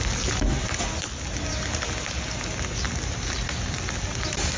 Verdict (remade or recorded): recorded